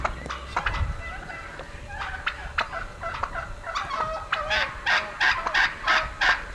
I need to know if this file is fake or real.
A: real